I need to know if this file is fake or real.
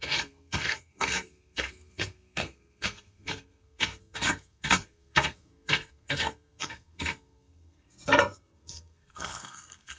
fake